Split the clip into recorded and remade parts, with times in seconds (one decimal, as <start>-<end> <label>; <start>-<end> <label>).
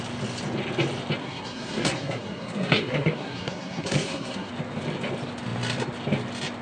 0.0-1.2 recorded; 1.2-4.5 remade; 4.5-6.6 recorded